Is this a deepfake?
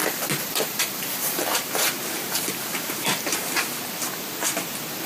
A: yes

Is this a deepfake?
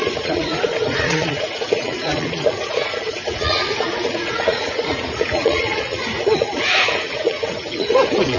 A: yes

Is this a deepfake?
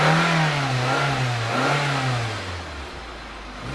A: no